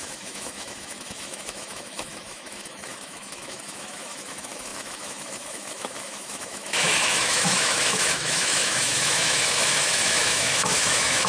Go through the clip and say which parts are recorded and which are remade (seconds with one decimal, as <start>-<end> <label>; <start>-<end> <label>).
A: 0.0-11.3 remade